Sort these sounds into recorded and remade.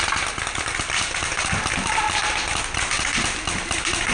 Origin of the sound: recorded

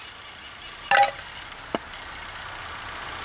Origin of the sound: recorded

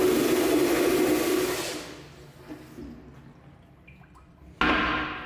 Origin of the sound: recorded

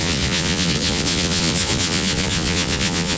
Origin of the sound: remade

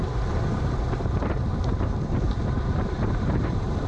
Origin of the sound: remade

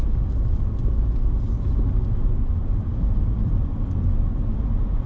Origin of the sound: recorded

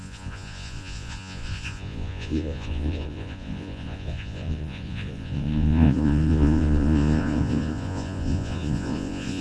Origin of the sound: remade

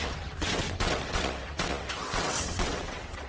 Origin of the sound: remade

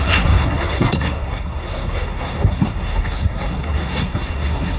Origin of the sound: remade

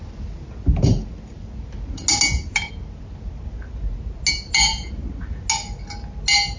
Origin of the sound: recorded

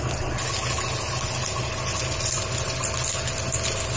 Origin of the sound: recorded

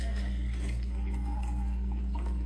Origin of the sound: remade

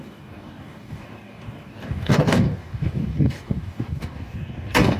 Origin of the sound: remade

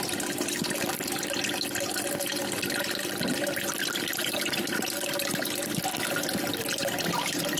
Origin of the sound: recorded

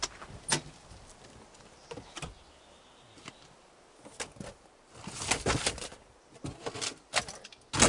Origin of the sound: recorded